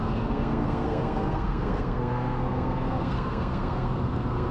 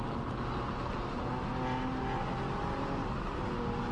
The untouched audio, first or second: second